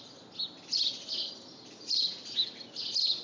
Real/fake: real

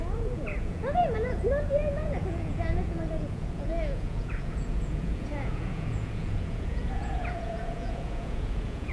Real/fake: fake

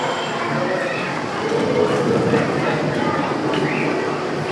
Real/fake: real